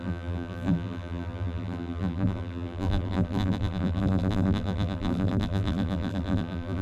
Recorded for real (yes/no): no